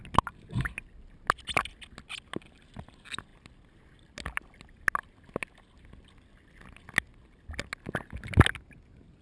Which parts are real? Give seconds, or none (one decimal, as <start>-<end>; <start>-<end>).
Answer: 0.0-9.2